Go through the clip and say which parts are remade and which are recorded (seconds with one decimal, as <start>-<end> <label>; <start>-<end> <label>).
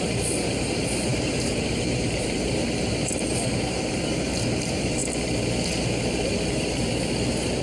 0.0-5.0 remade; 5.0-6.4 recorded; 6.4-7.6 remade